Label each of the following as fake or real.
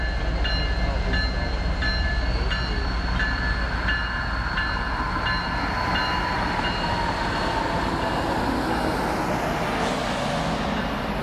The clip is real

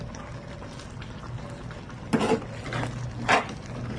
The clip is real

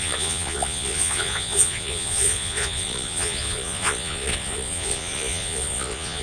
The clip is fake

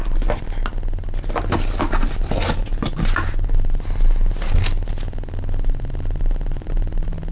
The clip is real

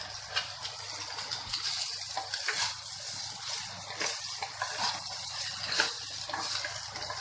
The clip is real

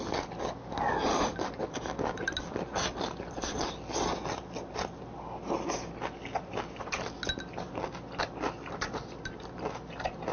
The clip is real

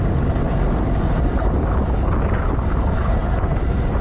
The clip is real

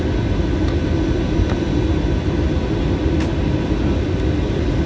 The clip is real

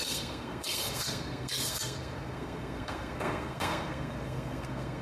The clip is fake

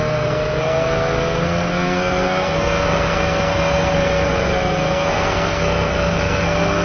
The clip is fake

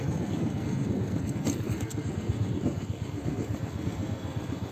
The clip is fake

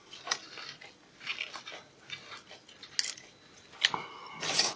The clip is real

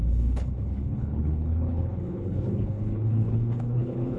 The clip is fake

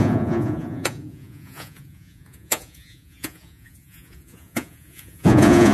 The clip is fake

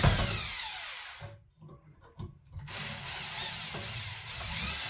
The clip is real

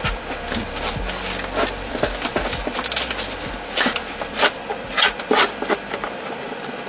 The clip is real